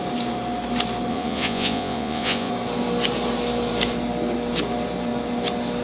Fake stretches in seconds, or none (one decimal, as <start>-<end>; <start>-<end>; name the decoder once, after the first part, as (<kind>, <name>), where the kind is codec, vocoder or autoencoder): 1.1-2.5 (vocoder, Vocos)